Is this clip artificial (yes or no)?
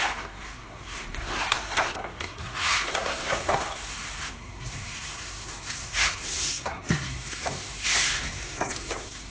yes